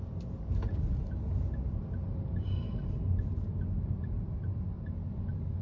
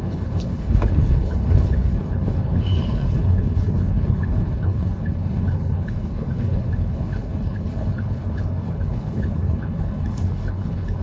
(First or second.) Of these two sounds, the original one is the first